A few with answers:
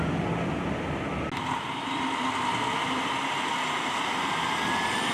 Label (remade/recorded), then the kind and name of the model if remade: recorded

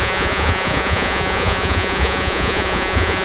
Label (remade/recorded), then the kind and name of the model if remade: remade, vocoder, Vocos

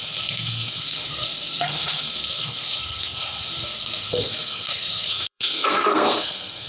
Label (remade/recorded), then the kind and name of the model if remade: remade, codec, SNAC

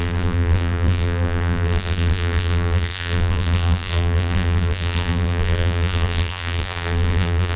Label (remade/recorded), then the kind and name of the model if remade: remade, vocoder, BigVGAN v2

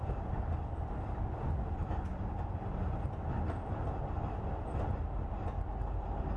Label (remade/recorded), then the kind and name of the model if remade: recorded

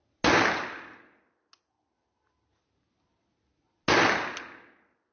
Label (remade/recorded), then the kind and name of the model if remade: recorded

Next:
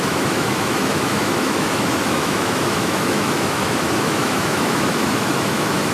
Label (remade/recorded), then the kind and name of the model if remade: remade, autoencoder, DAC-VAE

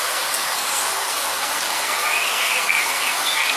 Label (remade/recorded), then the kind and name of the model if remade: remade, codec, SNAC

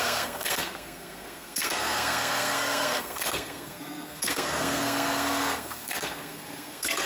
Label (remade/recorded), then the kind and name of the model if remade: remade, codec, SNAC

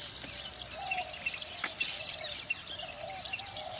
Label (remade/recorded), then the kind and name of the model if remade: recorded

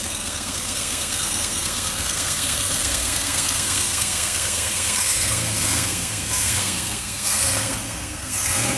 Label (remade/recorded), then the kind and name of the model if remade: remade, codec, SNAC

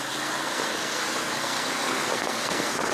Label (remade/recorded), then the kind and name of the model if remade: remade, codec, SNAC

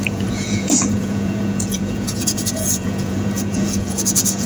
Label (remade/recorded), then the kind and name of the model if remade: remade, vocoder, Vocos